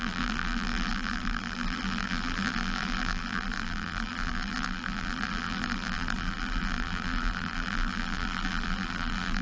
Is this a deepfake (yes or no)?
yes